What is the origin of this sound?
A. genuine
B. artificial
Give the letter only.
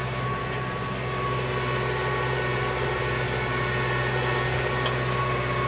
A